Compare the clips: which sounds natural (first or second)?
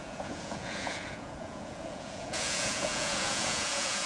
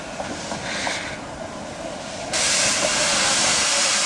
second